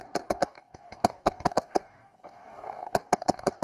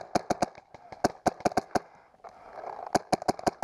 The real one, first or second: second